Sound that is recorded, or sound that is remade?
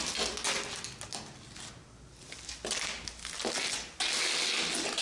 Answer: recorded